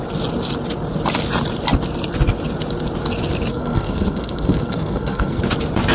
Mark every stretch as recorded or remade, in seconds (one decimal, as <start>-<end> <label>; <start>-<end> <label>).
0.0-3.5 recorded; 3.5-5.4 remade; 5.4-5.9 recorded